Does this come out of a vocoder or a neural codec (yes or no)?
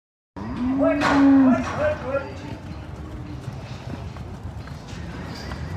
no